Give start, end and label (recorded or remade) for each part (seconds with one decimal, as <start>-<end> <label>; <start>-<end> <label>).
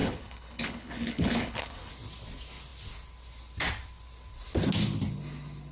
0.0-1.9 remade; 1.9-5.7 recorded